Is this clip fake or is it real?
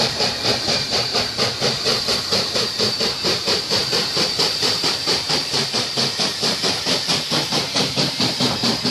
fake